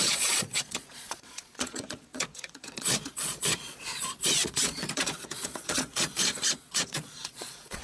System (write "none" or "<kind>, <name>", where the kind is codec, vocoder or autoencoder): vocoder, Vocos